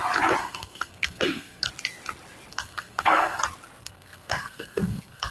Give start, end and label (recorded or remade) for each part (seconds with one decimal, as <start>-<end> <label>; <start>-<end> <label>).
0.0-0.4 recorded; 0.4-1.7 remade; 1.7-2.5 recorded; 2.5-3.4 remade; 3.4-3.8 recorded; 3.8-5.3 remade